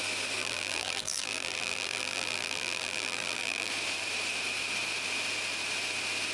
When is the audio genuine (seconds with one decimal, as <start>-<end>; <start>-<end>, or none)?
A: 0.0-0.4; 3.7-6.3